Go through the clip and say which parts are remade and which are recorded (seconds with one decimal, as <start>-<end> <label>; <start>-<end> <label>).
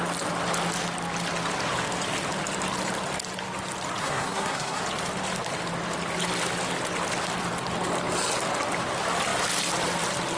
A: 0.0-4.0 recorded; 4.0-4.8 remade; 4.8-10.4 recorded